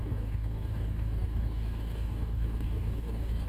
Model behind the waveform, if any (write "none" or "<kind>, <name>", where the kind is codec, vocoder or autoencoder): codec, DAC